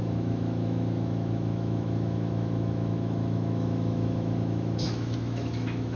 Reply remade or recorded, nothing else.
remade